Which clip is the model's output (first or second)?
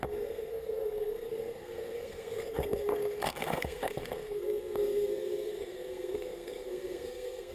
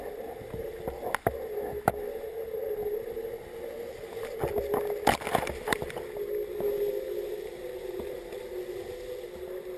first